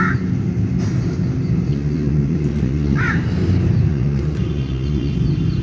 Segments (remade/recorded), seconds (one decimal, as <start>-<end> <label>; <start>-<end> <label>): 0.0-1.7 recorded; 1.7-3.0 remade; 3.0-3.9 recorded; 3.9-5.1 remade; 5.1-5.6 recorded